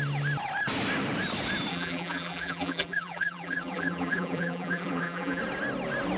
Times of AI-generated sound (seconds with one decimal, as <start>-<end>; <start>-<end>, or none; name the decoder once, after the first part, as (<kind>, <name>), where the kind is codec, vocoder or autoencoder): 1.7-5.4 (vocoder, BigVGAN v2)